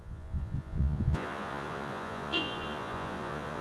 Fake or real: fake